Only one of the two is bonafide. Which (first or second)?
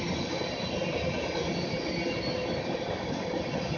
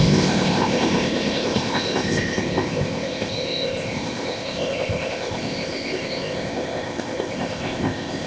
first